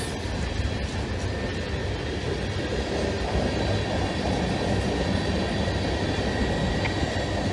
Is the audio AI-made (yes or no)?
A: no